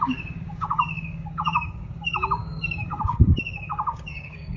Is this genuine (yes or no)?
no